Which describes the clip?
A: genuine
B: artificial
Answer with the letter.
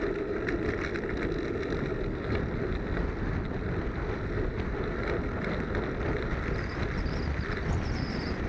A